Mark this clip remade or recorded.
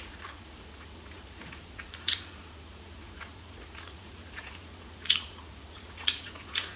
remade